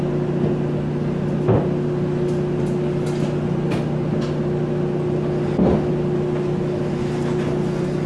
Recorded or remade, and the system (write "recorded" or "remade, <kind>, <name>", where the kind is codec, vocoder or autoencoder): recorded